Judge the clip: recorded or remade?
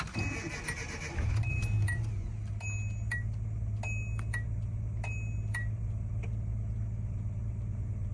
recorded